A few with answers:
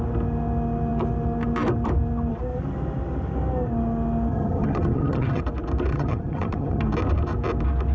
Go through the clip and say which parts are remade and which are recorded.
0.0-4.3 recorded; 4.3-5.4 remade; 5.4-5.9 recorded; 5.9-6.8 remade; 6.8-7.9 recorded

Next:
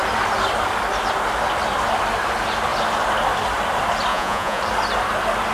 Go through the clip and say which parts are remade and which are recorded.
0.0-4.1 recorded; 4.1-4.6 remade; 4.6-5.5 recorded

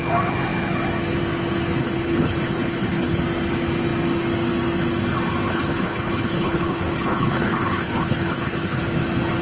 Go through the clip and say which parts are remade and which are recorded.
0.0-1.8 recorded; 1.8-3.2 remade; 3.2-5.5 recorded; 5.5-8.8 remade; 8.8-9.4 recorded

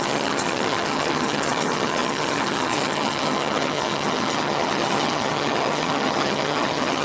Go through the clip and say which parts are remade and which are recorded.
0.0-7.0 remade

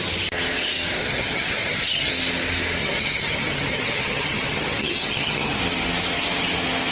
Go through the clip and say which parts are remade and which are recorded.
0.0-1.0 recorded; 1.0-2.1 remade; 2.1-2.8 recorded; 2.8-5.6 remade; 5.6-6.9 recorded

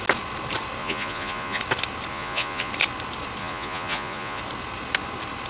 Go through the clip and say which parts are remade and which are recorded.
0.0-0.8 recorded; 0.8-1.6 remade; 1.6-2.1 recorded; 2.1-2.7 remade; 2.7-3.4 recorded; 3.4-4.4 remade; 4.4-5.5 recorded

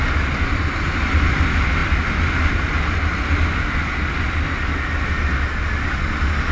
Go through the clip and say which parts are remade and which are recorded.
0.0-6.5 recorded